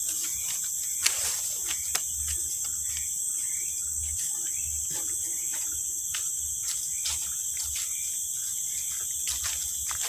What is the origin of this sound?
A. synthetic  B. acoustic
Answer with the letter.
B